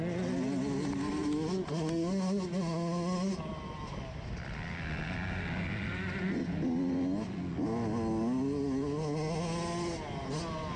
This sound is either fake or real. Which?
real